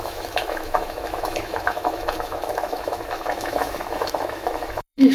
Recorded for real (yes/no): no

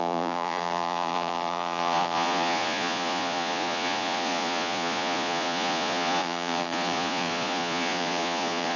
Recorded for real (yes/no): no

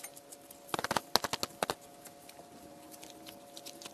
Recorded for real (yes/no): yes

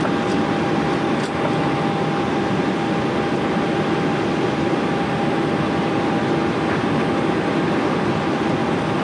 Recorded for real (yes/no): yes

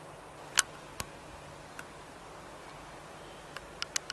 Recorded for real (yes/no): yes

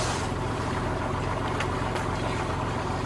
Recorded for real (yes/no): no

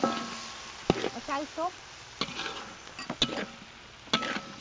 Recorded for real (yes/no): yes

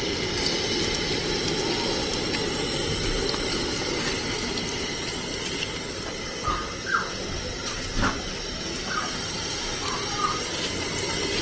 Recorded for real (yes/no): yes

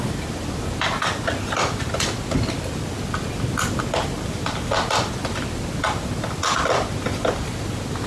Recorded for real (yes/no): yes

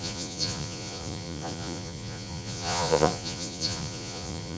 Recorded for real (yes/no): no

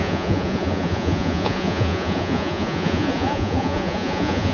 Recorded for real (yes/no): no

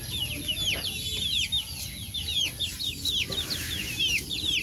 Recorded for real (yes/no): yes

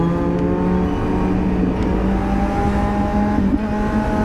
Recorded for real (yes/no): yes